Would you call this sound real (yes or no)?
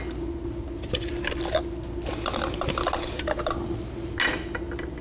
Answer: yes